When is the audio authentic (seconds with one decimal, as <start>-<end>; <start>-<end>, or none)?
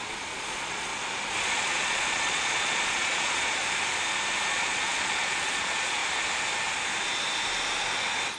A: 0.9-1.4; 3.6-4.5; 6.0-8.4